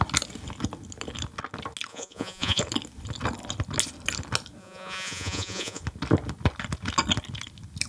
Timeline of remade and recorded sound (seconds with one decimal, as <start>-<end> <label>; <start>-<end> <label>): 0.0-1.9 recorded; 1.9-2.6 remade; 2.6-4.6 recorded; 4.6-5.8 remade; 5.8-7.9 recorded